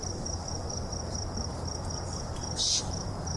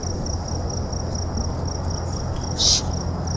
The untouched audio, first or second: second